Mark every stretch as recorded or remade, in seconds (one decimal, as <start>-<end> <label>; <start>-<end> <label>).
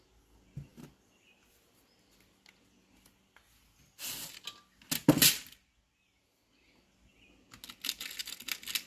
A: 0.0-8.9 recorded